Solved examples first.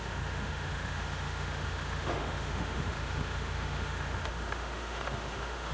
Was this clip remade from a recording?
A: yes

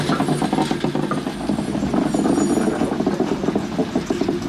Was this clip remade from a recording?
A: no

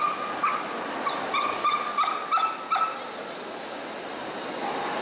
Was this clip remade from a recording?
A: no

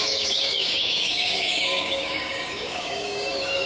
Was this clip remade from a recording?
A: yes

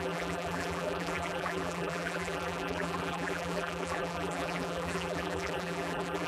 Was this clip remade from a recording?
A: yes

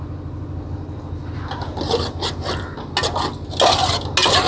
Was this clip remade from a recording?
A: no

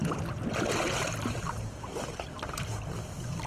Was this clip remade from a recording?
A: no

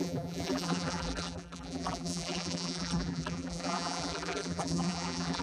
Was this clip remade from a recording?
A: yes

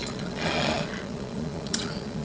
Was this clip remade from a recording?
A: yes